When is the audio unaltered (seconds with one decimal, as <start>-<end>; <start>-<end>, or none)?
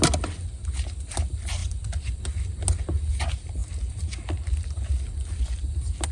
0.0-1.6; 2.2-3.6; 4.5-6.1